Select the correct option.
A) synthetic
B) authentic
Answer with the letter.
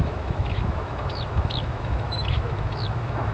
A